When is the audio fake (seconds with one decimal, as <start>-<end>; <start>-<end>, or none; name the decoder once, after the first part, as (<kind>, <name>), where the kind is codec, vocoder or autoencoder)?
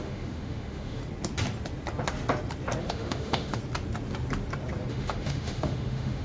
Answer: 0.0-1.0 (autoencoder, DAC-VAE); 2.8-3.6; 4.9-6.2